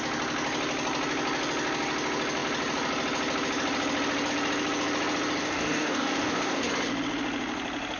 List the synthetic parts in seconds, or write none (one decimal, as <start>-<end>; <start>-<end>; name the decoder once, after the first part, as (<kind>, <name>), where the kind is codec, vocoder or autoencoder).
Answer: 5.4-6.7 (codec, DAC)